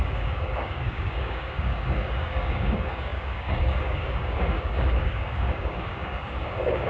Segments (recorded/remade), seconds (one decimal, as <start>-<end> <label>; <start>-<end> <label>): 0.0-6.9 remade